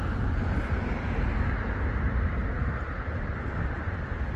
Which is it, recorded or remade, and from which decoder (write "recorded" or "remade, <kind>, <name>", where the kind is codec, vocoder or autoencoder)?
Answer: recorded